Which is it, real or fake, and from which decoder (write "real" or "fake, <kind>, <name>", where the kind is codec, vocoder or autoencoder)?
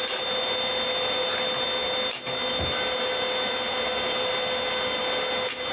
real